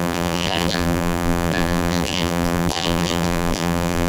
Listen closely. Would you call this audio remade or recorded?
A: remade